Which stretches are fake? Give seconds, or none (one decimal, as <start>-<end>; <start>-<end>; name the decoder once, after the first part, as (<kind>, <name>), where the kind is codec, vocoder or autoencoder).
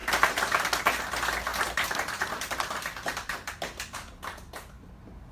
none